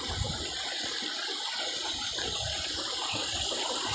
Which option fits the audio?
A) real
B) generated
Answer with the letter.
A